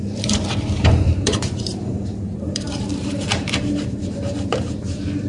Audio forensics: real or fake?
fake